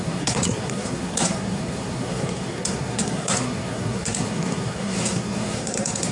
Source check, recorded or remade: remade